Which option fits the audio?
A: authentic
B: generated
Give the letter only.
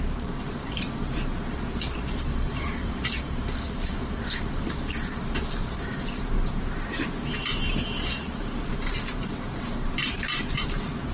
B